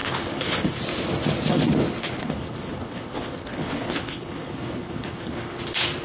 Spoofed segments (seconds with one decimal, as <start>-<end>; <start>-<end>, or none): 0.0-0.7; 2.0-5.6